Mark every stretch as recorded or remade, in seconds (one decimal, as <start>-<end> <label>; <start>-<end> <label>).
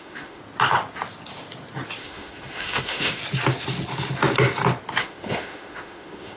0.0-0.4 remade; 0.4-2.0 recorded; 2.0-3.2 remade; 3.2-5.0 recorded; 5.0-6.4 remade